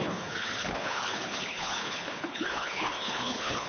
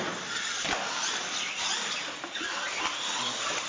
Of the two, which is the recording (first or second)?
second